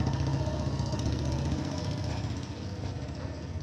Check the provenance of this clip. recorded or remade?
remade